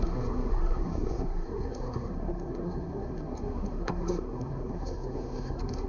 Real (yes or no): no